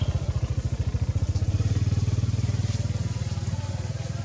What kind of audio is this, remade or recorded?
recorded